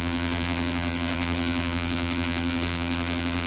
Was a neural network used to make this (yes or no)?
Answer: yes